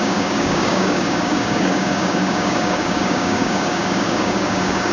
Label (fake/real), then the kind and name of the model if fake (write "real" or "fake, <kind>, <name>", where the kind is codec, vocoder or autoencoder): fake, codec, DAC